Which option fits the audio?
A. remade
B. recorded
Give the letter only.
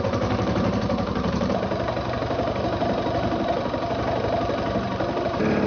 A